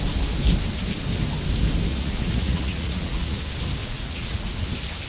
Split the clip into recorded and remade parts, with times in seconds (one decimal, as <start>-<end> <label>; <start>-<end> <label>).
0.0-1.9 recorded; 1.9-3.4 remade; 3.4-3.8 recorded; 3.8-4.5 remade; 4.5-5.1 recorded